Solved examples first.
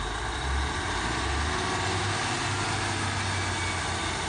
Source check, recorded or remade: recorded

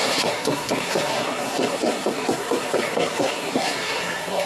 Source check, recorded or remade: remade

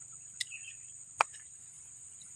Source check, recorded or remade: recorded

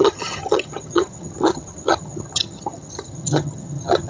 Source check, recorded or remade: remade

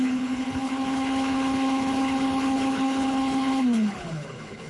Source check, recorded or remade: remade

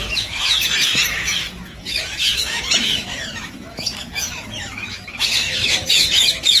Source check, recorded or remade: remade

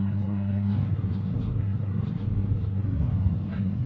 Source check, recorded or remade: remade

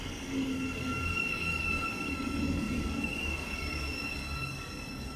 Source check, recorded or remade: remade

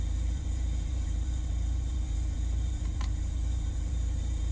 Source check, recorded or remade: remade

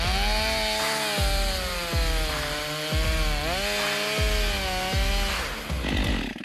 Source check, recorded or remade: recorded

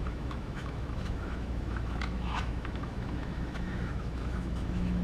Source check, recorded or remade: remade